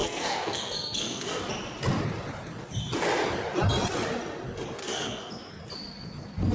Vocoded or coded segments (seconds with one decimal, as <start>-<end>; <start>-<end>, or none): 0.0-1.4; 4.8-5.3